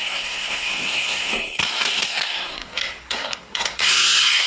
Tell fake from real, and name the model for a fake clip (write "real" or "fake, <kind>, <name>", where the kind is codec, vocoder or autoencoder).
fake, codec, SNAC